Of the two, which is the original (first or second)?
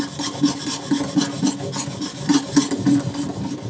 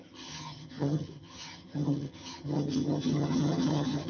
first